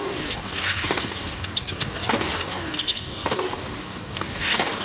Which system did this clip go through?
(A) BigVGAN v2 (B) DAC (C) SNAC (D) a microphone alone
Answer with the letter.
B